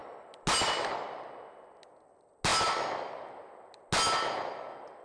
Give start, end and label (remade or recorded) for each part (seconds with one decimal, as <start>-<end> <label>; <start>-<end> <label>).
0.0-5.0 recorded